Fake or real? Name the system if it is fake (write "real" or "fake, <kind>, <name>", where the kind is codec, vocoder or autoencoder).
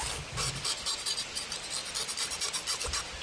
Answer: real